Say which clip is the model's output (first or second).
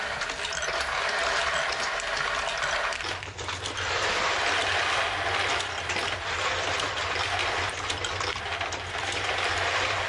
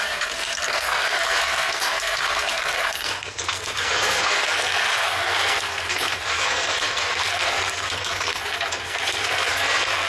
second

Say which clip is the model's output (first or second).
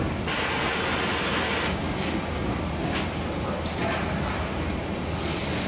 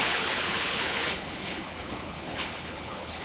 second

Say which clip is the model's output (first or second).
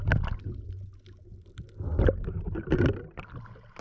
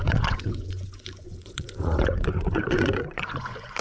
second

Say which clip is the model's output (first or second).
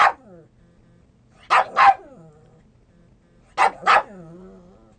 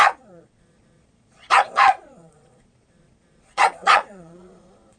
second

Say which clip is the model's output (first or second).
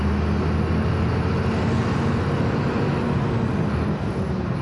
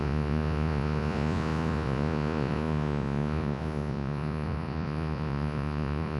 second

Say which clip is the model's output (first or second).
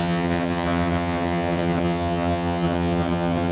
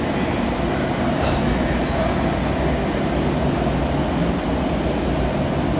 first